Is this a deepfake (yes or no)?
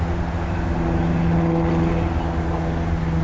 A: no